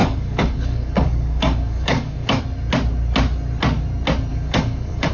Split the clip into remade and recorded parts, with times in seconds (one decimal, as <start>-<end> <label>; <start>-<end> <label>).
0.0-2.4 remade; 2.4-4.3 recorded; 4.3-5.1 remade